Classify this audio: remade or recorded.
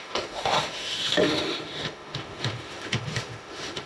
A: remade